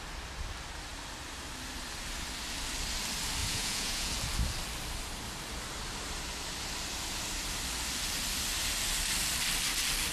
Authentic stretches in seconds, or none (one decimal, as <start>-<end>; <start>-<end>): 0.0-3.4; 4.1-10.1

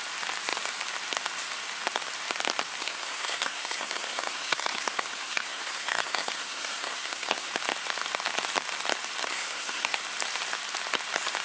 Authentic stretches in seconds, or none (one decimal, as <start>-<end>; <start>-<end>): 0.0-2.8; 7.5-9.2; 10.0-11.4

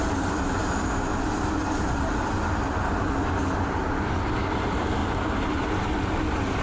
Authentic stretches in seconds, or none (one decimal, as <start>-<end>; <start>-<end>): 0.0-6.6

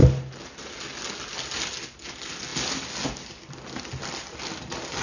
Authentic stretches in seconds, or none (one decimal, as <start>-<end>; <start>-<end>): 0.0-5.0

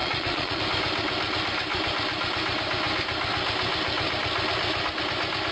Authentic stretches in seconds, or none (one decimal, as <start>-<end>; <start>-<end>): 0.6-5.5

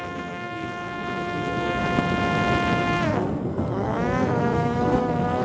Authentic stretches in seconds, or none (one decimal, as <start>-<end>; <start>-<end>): 1.8-2.8